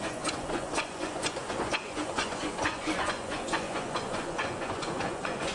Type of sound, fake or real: fake